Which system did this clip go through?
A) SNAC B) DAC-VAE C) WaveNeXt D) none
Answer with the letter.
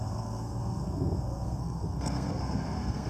A